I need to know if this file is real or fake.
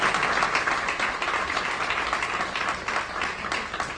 real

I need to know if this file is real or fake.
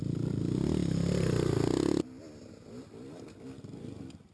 real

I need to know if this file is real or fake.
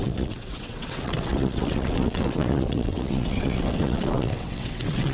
fake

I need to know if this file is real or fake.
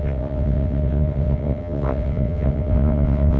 fake